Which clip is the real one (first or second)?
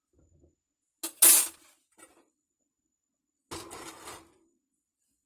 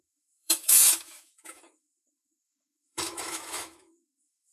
first